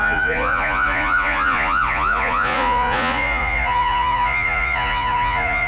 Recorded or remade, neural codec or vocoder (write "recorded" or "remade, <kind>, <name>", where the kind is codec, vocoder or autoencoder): remade, vocoder, Vocos